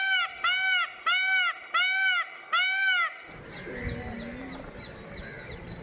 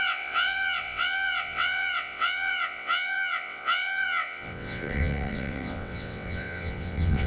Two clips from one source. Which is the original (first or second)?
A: first